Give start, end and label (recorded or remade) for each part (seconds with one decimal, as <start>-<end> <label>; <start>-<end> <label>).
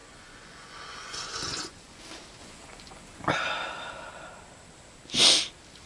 0.0-2.0 remade; 2.0-2.4 recorded; 2.4-3.3 remade; 3.3-5.9 recorded